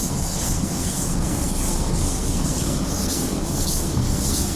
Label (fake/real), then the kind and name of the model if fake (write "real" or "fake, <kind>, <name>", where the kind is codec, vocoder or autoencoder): fake, codec, SNAC